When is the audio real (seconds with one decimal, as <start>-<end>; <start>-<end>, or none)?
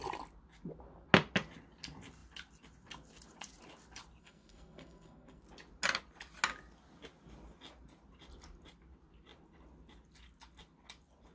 0.0-4.2; 5.4-11.3